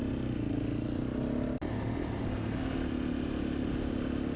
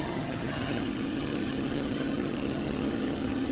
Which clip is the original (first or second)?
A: first